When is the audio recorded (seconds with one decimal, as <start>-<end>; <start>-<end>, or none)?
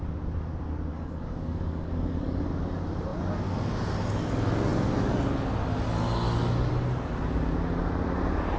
0.0-0.9; 2.5-8.6